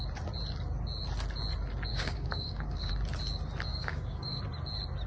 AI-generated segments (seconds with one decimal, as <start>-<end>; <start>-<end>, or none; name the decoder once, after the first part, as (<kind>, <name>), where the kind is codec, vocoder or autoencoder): 1.9-2.9 (codec, DAC); 3.7-4.4